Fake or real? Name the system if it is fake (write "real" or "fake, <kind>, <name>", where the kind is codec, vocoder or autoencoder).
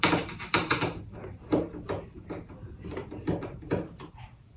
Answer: fake, vocoder, BigVGAN v2